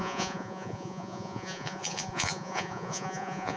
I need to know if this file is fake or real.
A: fake